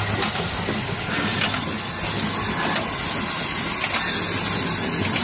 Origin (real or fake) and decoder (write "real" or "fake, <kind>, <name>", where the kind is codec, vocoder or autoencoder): real